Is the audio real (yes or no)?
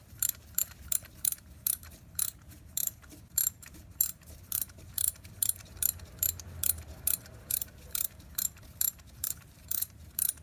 no